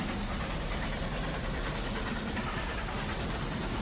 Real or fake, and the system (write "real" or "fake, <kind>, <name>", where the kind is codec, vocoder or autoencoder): fake, vocoder, BigVGAN v2